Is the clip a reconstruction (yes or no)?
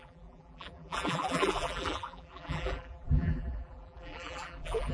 yes